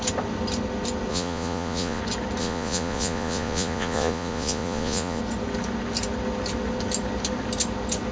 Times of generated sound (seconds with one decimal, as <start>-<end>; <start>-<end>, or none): 1.1-2.0; 2.4-5.2